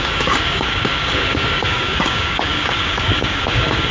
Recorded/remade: remade